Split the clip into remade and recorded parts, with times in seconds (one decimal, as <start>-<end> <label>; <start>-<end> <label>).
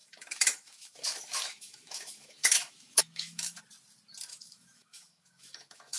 0.0-3.6 remade; 3.6-4.3 recorded; 4.3-6.0 remade